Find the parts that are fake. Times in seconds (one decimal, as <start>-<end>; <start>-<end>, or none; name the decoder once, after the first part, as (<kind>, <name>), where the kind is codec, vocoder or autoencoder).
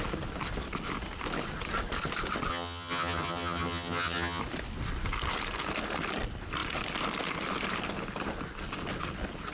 2.5-4.4 (vocoder, HiFi-GAN)